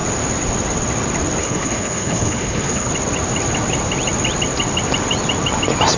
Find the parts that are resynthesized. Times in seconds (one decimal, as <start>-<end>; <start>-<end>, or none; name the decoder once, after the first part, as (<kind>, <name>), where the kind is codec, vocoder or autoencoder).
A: 1.4-2.9 (codec, HILCodec)